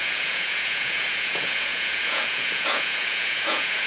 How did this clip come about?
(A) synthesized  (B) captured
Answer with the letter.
A